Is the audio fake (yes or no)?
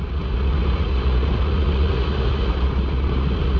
yes